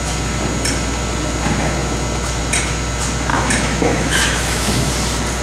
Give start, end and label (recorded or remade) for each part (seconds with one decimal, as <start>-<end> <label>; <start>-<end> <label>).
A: 0.0-3.3 recorded; 3.3-4.9 remade; 4.9-5.4 recorded